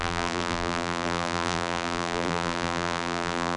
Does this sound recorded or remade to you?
remade